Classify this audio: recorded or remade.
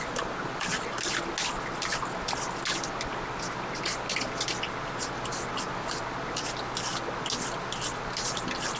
recorded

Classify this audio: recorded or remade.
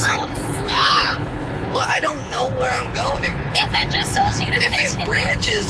remade